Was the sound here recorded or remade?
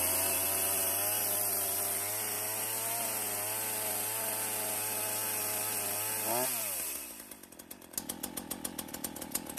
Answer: recorded